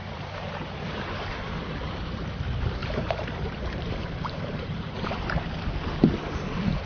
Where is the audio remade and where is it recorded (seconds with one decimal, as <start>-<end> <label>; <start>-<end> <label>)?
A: 0.0-1.8 remade; 1.8-2.8 recorded; 2.8-5.4 remade; 5.4-6.9 recorded